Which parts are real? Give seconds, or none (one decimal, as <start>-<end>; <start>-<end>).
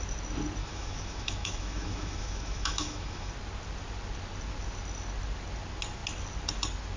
0.0-0.6; 3.3-7.0